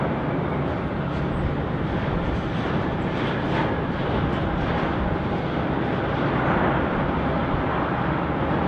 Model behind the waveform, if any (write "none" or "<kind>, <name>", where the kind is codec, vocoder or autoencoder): none